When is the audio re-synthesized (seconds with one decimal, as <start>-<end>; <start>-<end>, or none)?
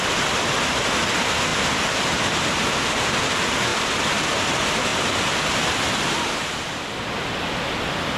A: 3.7-4.3